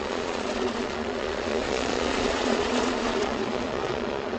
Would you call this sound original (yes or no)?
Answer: no